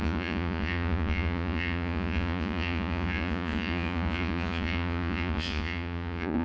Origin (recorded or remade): remade